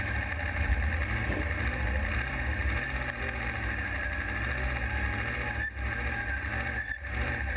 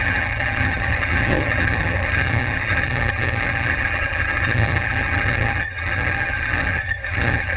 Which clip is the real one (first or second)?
first